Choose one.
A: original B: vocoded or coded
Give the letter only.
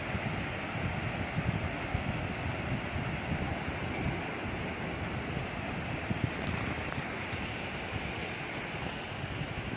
A